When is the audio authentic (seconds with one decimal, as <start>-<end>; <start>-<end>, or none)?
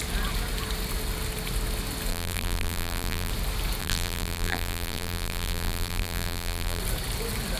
0.0-2.1; 3.3-3.8; 6.8-7.6